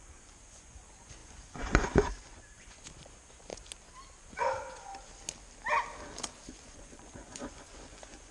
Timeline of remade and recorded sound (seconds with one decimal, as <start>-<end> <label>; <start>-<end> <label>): 0.0-3.5 remade; 3.5-4.2 recorded; 4.2-4.9 remade; 4.9-6.5 recorded; 6.5-8.3 remade